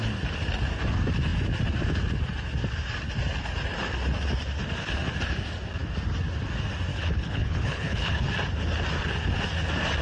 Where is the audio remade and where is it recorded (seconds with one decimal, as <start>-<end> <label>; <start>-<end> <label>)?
0.0-6.9 recorded; 6.9-8.2 remade; 8.2-10.0 recorded